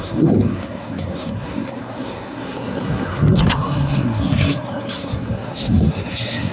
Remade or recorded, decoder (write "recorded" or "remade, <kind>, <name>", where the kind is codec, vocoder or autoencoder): remade, codec, SNAC